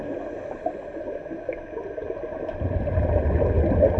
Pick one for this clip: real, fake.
real